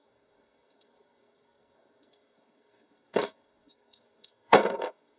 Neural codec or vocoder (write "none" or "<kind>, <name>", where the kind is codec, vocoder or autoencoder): codec, SNAC